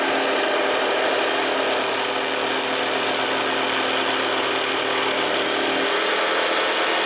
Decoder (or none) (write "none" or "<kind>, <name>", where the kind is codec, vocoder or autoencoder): none